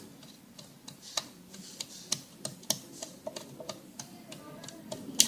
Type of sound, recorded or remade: recorded